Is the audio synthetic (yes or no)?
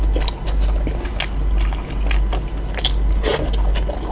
no